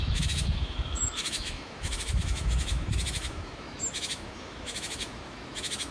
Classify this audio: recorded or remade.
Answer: remade